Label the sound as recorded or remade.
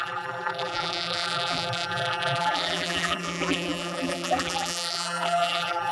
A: remade